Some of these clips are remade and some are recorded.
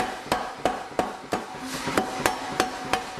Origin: recorded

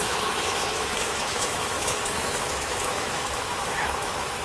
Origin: remade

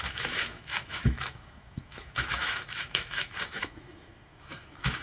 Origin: remade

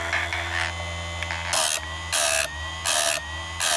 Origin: recorded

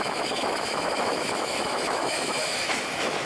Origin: remade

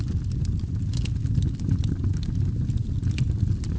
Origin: recorded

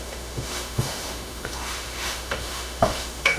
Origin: remade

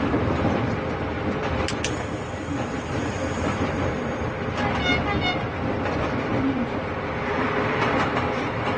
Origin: recorded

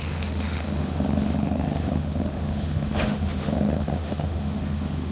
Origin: remade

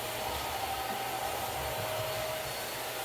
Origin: recorded